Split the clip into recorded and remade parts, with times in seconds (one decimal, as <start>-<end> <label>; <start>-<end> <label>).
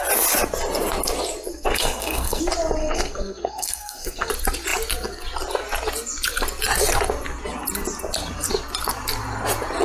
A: 0.0-1.5 recorded; 1.5-2.4 remade; 2.4-2.8 recorded; 2.8-4.3 remade; 4.3-9.8 recorded